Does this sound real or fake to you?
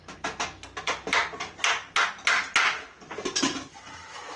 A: real